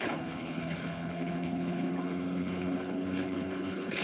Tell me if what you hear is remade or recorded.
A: remade